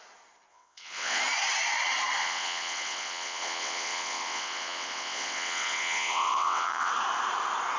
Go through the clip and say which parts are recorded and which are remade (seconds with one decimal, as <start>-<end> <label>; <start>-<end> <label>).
0.0-0.5 recorded; 0.5-1.2 remade; 1.2-2.2 recorded; 2.2-6.9 remade; 6.9-7.8 recorded